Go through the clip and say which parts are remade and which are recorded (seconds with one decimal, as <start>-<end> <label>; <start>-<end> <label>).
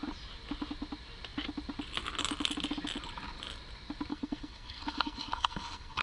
0.0-4.1 recorded; 4.1-6.0 remade